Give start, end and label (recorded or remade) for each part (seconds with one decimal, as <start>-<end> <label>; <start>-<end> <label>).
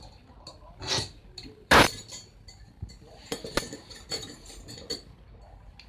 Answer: 0.0-5.9 recorded